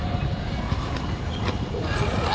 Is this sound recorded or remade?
recorded